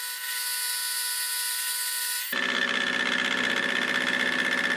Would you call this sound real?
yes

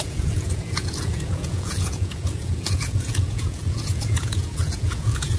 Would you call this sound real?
no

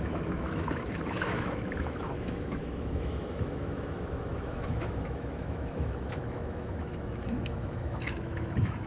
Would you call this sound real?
no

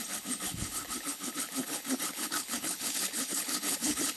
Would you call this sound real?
no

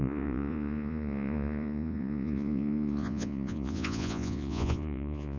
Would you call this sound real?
no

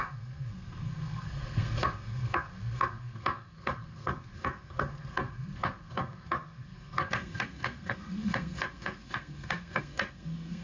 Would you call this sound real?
no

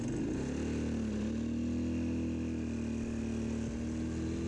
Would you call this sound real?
yes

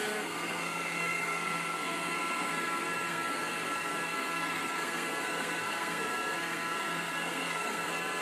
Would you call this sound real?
no